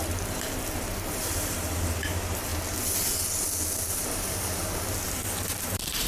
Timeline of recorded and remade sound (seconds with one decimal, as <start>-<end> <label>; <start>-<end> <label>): 0.0-2.5 remade; 2.5-4.1 recorded; 4.1-4.6 remade; 4.6-5.1 recorded; 5.1-6.1 remade